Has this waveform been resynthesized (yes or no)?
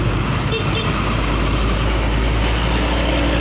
no